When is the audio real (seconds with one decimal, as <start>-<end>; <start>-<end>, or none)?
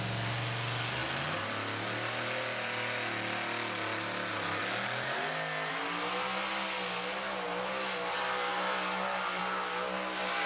0.0-10.5